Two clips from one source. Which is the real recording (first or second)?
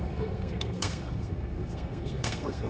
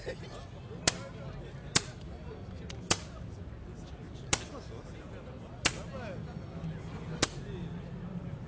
second